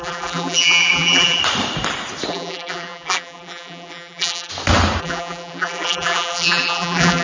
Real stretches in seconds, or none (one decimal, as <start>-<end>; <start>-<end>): 1.4-2.3; 4.5-5.0